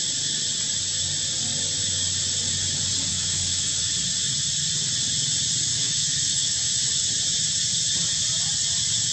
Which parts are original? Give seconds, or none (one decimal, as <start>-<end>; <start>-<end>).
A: 0.0-3.1; 3.9-5.7; 6.7-9.1